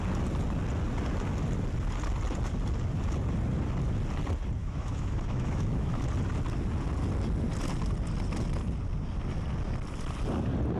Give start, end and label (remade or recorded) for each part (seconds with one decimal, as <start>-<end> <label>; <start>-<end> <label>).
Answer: 0.0-4.6 recorded; 4.6-6.0 remade; 6.0-10.8 recorded